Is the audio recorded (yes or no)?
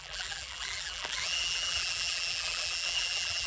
no